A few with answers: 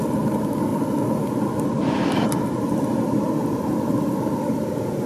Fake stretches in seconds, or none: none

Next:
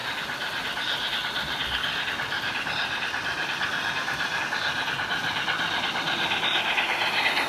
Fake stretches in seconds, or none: 0.0-4.4 (vocoder, BigVGAN v2); 5.2-6.6

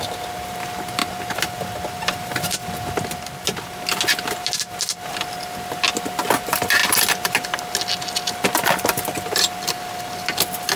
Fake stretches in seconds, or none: none

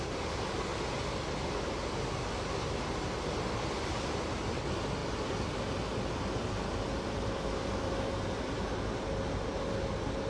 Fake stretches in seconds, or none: 0.0-0.7 (vocoder, BigVGAN v2); 3.0-5.0; 6.8-10.3

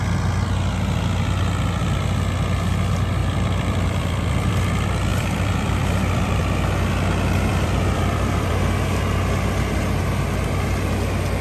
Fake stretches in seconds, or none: 3.2-4.5 (vocoder, BigVGAN v2); 5.1-6.4; 7.5-8.5

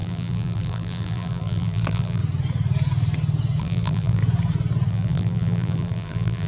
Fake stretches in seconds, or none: 0.0-2.2 (vocoder, BigVGAN v2); 3.6-4.2; 4.9-6.5

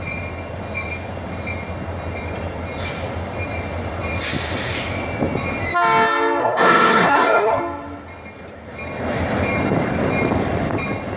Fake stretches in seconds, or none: 6.4-7.6 (codec, SNAC)